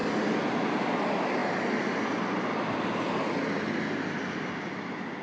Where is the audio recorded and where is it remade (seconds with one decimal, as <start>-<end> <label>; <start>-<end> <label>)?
0.0-5.2 recorded